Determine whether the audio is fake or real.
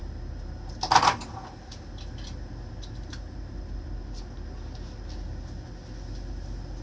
real